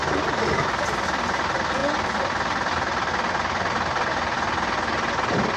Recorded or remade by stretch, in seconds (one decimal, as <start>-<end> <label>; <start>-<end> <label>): 0.0-5.6 recorded